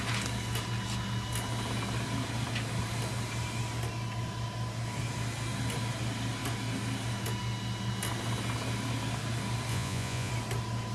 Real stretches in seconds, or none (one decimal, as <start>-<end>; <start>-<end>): 0.0-9.7; 10.3-10.9

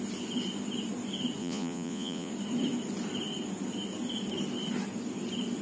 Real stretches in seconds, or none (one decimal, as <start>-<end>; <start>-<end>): 0.0-1.4; 2.3-5.6